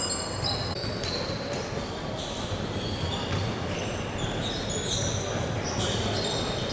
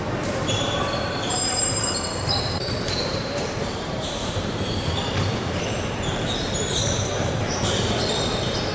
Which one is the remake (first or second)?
second